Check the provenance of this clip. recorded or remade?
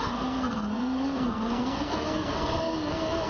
remade